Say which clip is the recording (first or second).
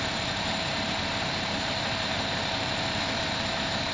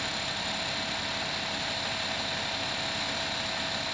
second